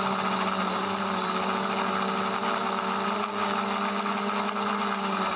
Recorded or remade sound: recorded